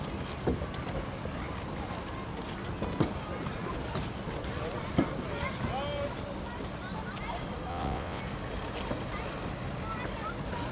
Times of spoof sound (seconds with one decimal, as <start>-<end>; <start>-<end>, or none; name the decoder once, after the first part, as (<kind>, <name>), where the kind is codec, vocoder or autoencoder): 7.7-8.2 (vocoder, WaveNeXt)